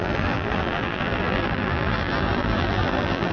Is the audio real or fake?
fake